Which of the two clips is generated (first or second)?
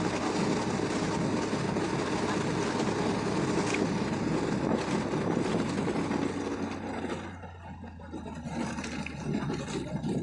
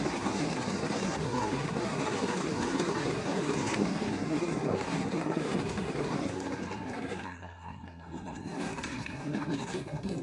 second